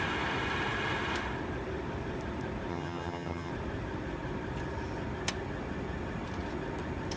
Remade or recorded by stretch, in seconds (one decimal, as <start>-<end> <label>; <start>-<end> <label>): 0.0-2.7 recorded; 2.7-3.5 remade; 3.5-7.2 recorded